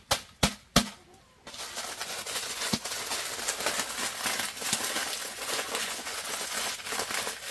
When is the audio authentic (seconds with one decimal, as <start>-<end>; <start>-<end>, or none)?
0.0-2.0; 3.0-5.2; 6.8-7.5